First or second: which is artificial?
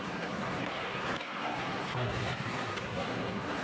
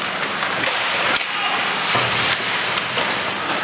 first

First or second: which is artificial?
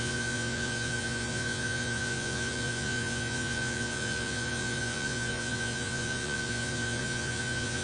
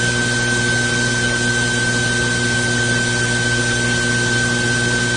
first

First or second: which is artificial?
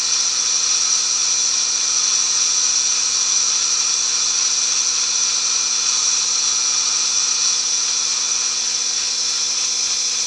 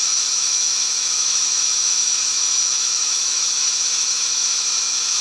second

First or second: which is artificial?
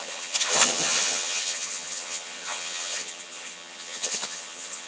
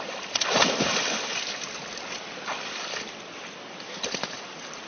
first